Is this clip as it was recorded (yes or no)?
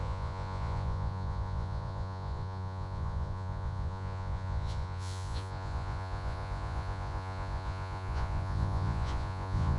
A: no